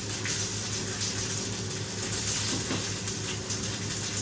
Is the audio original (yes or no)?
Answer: yes